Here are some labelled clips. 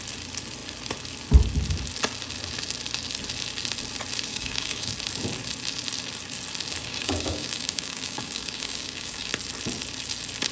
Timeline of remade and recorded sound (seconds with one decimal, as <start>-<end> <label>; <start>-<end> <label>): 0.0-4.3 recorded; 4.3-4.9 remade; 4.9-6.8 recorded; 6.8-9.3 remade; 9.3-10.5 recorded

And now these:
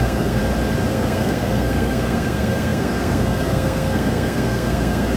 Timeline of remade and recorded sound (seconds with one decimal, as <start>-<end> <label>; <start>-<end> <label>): 0.0-0.4 remade; 0.4-0.9 recorded; 0.9-5.2 remade

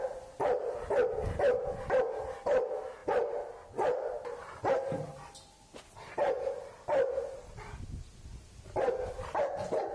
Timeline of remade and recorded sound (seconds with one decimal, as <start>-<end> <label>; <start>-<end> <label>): 0.0-9.9 recorded

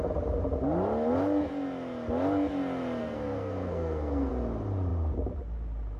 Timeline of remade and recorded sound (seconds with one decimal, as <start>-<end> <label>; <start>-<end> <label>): 0.0-3.0 recorded; 3.0-4.3 remade; 4.3-6.0 recorded

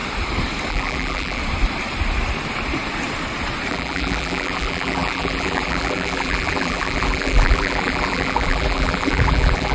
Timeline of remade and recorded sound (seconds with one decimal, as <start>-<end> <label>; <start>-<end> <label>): 0.0-0.7 recorded; 0.7-1.4 remade; 1.4-3.7 recorded; 3.7-9.7 remade

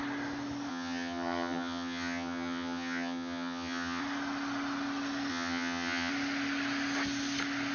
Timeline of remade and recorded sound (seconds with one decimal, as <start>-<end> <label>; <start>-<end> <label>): 0.0-0.7 recorded; 0.7-4.0 remade; 4.0-5.3 recorded; 5.3-6.1 remade; 6.1-7.7 recorded

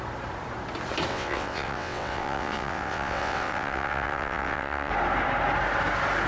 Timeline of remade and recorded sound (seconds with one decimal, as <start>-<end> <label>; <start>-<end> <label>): 0.0-1.1 recorded; 1.1-4.9 remade; 4.9-6.3 recorded

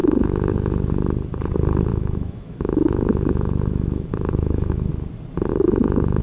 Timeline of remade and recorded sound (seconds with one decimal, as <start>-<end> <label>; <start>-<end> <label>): 0.0-0.5 remade; 0.5-1.9 recorded; 1.9-4.9 remade; 4.9-5.5 recorded; 5.5-6.2 remade